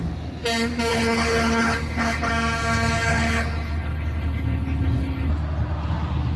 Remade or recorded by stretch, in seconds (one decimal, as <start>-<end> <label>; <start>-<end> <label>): 0.0-0.9 recorded; 0.9-2.3 remade; 2.3-3.1 recorded; 3.1-5.3 remade; 5.3-6.4 recorded